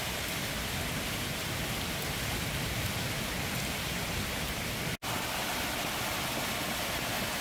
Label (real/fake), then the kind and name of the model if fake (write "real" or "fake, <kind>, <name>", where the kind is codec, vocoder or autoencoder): real